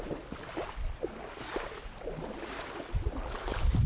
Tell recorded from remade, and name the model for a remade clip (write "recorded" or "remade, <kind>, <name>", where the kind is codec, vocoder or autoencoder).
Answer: recorded